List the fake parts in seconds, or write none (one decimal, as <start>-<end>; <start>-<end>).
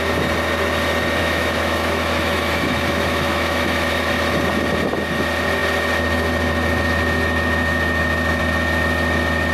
1.2-4.4